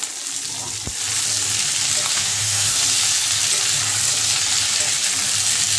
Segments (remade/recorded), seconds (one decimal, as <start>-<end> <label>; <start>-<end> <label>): 0.0-2.1 recorded; 2.1-2.8 remade; 2.8-5.8 recorded